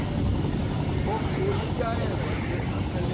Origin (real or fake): real